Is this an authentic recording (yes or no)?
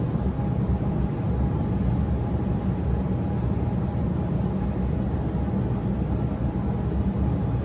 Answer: yes